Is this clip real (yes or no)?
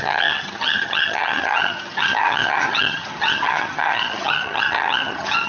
no